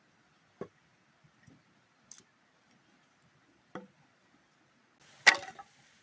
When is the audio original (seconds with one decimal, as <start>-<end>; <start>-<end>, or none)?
0.0-6.0